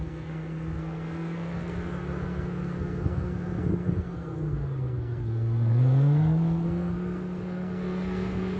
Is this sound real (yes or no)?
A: no